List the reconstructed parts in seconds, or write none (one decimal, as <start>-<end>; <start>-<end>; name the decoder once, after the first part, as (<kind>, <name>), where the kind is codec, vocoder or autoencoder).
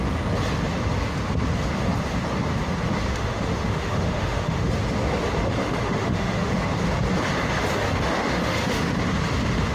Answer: 3.1-4.7 (autoencoder, DAC-VAE); 5.6-6.5; 7.8-9.0